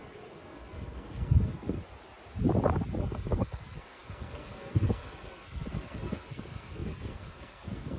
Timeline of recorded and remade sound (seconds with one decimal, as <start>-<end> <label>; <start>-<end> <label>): 0.0-1.8 remade; 1.8-3.0 recorded; 3.0-8.0 remade